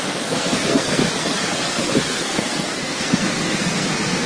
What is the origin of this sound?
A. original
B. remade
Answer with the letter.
B